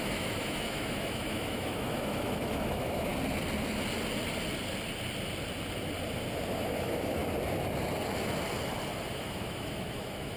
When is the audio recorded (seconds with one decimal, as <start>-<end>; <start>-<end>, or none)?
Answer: 3.1-6.5; 7.2-9.1